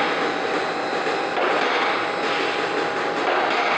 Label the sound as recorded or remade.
recorded